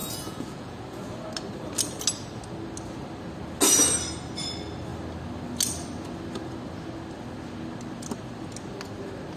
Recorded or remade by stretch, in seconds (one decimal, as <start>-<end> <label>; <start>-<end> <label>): 0.0-0.8 remade; 0.8-9.4 recorded